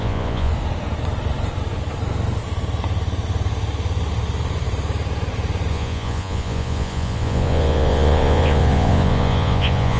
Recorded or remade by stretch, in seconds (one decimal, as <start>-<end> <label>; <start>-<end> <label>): 0.0-0.5 remade; 0.5-5.7 recorded; 5.7-10.0 remade